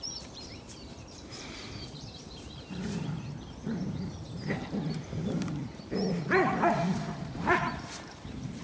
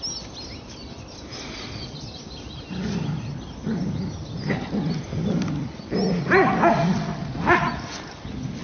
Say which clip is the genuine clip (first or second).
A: second